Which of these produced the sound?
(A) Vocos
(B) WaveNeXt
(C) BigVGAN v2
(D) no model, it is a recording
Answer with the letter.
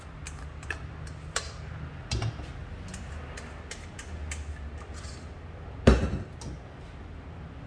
D